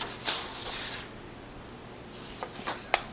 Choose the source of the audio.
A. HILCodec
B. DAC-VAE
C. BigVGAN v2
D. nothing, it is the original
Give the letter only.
D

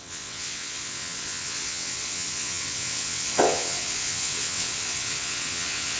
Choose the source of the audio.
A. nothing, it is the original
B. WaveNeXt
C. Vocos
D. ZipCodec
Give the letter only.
B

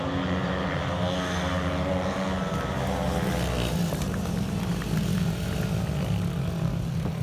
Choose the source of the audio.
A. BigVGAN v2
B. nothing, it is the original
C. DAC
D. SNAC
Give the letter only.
B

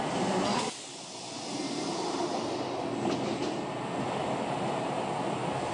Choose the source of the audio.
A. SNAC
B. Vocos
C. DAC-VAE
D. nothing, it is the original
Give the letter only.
D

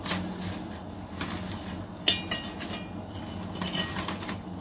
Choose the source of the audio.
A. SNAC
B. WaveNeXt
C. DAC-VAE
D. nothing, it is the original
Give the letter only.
D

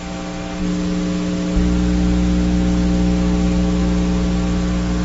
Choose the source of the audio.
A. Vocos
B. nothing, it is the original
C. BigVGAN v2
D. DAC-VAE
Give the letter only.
B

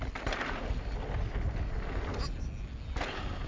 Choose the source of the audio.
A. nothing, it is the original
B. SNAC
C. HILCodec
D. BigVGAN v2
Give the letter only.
A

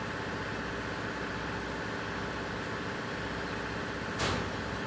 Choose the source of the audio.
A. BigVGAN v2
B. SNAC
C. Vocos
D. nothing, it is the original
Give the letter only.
D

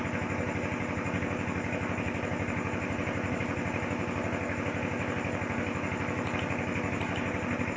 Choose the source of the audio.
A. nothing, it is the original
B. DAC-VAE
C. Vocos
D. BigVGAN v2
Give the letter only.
A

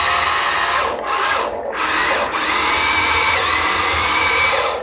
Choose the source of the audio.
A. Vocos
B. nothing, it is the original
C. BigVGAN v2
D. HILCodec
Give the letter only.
C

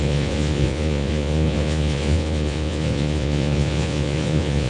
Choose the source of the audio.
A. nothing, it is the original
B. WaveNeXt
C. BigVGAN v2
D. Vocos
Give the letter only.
D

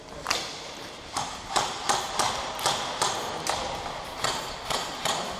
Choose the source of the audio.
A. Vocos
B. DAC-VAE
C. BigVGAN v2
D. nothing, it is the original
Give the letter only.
D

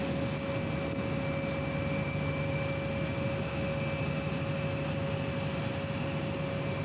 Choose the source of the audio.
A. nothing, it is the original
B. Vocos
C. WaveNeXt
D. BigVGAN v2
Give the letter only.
A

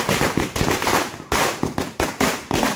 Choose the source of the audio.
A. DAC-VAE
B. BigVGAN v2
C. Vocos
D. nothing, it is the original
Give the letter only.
D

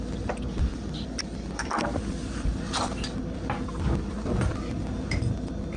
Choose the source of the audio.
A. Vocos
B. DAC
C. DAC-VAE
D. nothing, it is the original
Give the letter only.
D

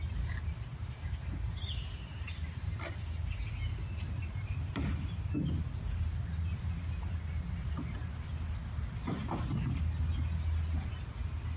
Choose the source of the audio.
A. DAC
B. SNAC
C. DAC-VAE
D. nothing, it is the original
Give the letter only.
D